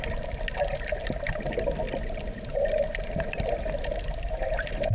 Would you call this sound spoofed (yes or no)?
no